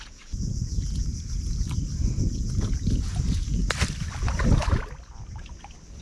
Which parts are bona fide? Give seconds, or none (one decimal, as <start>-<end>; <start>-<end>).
1.1-2.2; 3.6-6.0